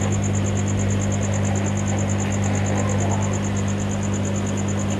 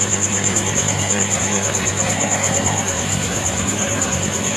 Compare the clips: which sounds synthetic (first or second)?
second